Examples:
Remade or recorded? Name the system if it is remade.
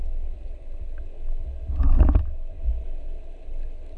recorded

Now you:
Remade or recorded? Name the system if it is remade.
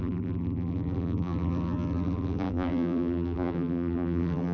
remade, vocoder, BigVGAN v2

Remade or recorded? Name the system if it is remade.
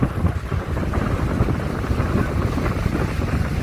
recorded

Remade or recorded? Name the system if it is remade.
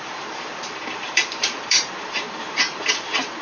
remade, vocoder, BigVGAN v2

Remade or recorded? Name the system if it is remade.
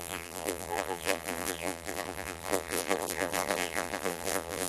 remade, vocoder, BigVGAN v2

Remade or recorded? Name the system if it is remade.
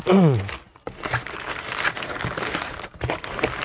recorded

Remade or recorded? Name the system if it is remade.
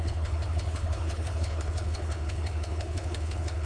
remade, codec, HILCodec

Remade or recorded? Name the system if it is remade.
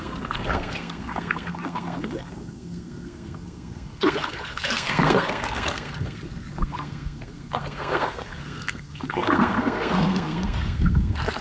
remade, codec, SNAC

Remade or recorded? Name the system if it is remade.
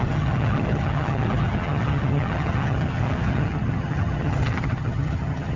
remade, vocoder, HiFi-GAN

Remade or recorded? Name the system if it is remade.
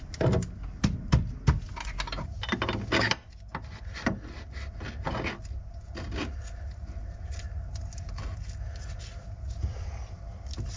recorded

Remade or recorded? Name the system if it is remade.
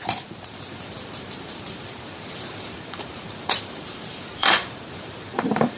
remade, vocoder, BigVGAN v2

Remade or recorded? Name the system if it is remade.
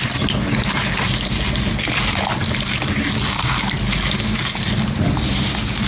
recorded